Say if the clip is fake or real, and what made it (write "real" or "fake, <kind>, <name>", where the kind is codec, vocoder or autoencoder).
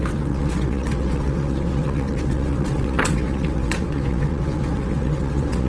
fake, vocoder, WaveNeXt